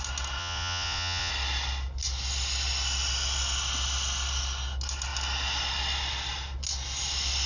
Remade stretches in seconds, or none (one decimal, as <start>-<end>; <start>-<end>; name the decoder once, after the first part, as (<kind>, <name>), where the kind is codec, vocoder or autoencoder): 0.4-1.3 (vocoder, Vocos)